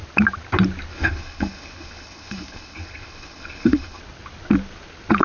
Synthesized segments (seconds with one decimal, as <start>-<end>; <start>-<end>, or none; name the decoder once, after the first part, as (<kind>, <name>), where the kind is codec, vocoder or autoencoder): 0.9-4.0 (codec, HILCodec)